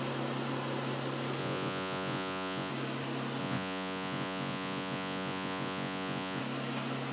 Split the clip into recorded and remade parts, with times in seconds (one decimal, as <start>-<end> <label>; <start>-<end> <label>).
0.0-1.4 recorded; 1.4-2.7 remade; 2.7-3.4 recorded; 3.4-6.4 remade; 6.4-7.1 recorded